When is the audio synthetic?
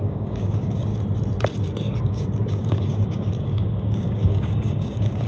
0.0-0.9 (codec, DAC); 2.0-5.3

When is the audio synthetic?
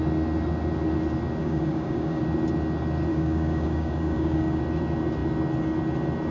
1.4-2.2 (codec, DAC); 3.1-4.6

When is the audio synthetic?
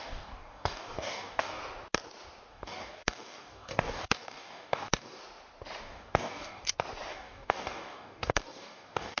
0.0-1.6 (codec, DAC); 2.5-5.2; 5.8-6.6; 7.1-9.2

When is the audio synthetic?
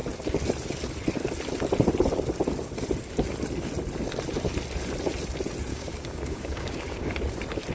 5.7-7.1 (codec, DAC)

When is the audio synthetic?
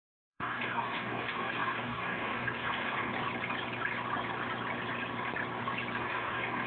0.0-3.1 (codec, DAC); 6.0-6.7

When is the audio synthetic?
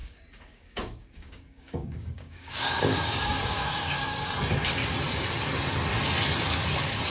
0.0-4.3 (codec, DAC)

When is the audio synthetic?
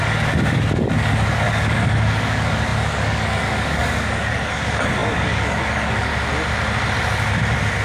0.0-6.1 (codec, DAC)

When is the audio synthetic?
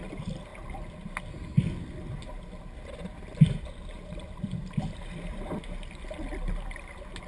none